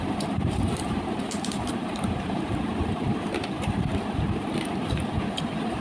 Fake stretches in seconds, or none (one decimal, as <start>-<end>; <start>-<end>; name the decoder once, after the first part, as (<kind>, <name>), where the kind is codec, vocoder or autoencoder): 0.0-5.8 (vocoder, BigVGAN v2)